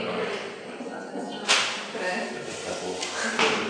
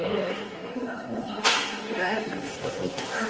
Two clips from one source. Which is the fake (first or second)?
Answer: second